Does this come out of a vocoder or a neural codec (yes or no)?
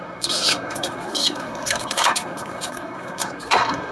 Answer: yes